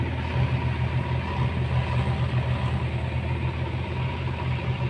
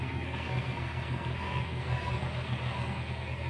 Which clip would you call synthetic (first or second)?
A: second